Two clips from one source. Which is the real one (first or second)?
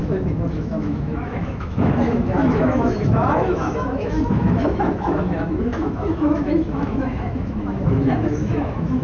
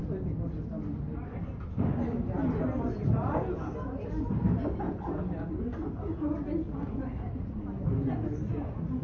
second